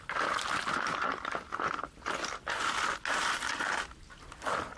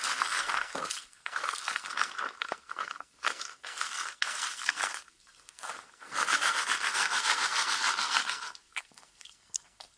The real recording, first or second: first